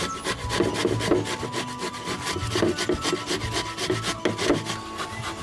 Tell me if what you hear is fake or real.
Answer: real